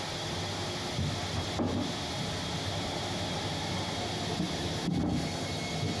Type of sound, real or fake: real